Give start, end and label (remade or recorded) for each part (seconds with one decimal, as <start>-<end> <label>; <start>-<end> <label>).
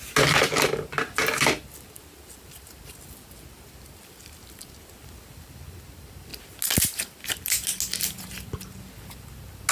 0.0-9.7 recorded